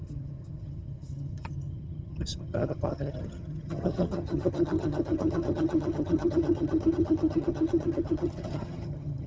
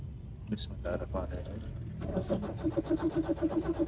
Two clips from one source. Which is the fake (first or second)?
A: first